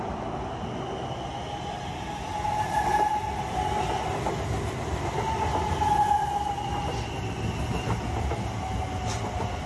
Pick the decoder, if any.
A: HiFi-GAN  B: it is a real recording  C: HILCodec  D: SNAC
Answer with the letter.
B